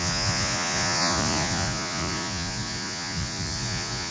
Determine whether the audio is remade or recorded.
remade